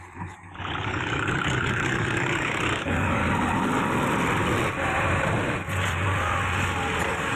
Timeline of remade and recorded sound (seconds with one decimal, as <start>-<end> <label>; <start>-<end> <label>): 0.0-3.2 remade; 3.2-7.0 recorded; 7.0-7.4 remade